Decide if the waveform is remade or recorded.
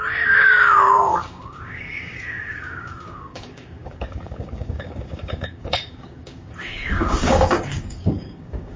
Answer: remade